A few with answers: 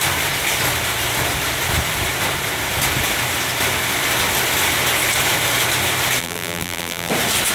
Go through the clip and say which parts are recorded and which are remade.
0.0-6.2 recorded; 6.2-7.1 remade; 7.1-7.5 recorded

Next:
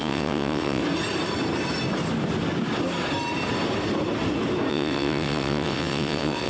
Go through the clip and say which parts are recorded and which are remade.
0.0-0.8 remade; 0.8-4.7 recorded; 4.7-6.5 remade

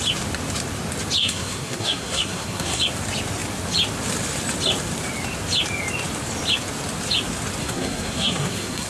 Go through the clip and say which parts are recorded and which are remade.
0.0-1.2 recorded; 1.2-2.8 remade; 2.8-7.6 recorded; 7.6-8.9 remade

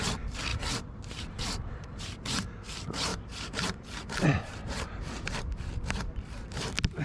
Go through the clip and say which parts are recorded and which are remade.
0.0-0.5 recorded; 0.5-2.0 remade; 2.0-3.1 recorded; 3.1-5.2 remade; 5.2-7.0 recorded

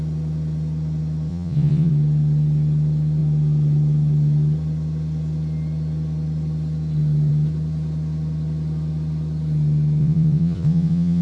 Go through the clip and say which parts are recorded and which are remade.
0.0-1.3 recorded; 1.3-1.9 remade; 1.9-10.0 recorded; 10.0-11.2 remade

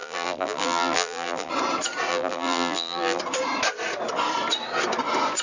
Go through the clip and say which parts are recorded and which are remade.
0.0-1.5 remade; 1.5-2.1 recorded; 2.1-3.2 remade; 3.2-5.4 recorded

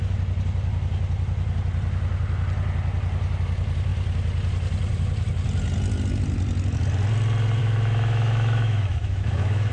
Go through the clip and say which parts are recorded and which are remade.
0.0-7.6 recorded; 7.6-9.7 remade

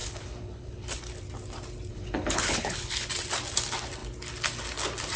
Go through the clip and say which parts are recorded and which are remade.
0.0-1.0 remade; 1.0-1.9 recorded; 1.9-3.1 remade; 3.1-5.2 recorded